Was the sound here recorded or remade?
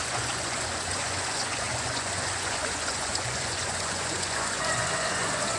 remade